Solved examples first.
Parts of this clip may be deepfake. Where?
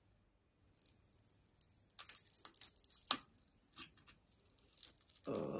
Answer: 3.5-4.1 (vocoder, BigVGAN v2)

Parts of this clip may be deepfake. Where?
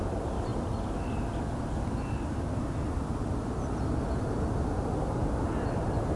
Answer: none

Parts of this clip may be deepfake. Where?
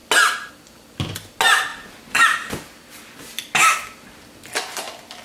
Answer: 1.7-2.5 (vocoder, BigVGAN v2)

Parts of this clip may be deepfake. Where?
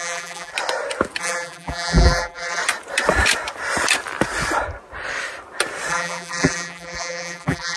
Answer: 0.0-0.5 (vocoder, BigVGAN v2); 1.2-2.6; 5.9-7.8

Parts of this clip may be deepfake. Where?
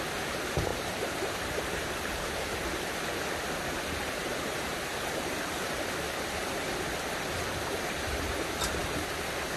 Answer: 0.7-2.9 (vocoder, BigVGAN v2); 4.3-6.7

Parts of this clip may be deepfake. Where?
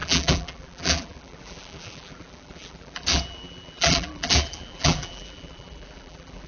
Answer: 0.0-6.5 (vocoder, BigVGAN v2)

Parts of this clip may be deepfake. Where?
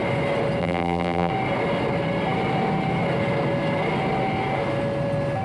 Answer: 0.6-1.3 (vocoder, BigVGAN v2)